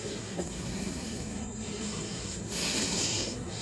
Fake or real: fake